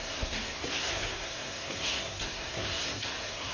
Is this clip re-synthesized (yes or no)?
yes